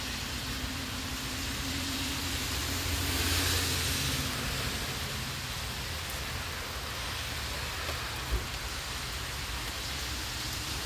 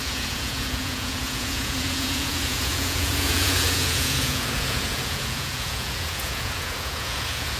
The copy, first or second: second